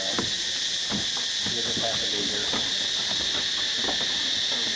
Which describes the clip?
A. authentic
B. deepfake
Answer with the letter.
A